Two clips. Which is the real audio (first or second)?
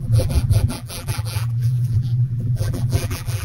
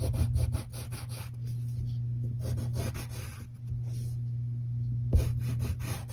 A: second